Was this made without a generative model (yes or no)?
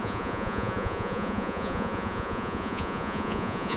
no